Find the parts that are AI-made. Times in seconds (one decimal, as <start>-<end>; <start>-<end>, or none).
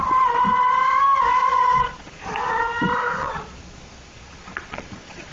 1.4-2.2; 3.2-5.3